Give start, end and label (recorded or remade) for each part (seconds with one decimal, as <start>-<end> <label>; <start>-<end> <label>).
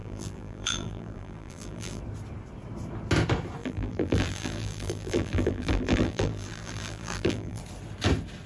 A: 0.0-2.0 remade; 2.0-3.6 recorded; 3.6-7.6 remade; 7.6-8.5 recorded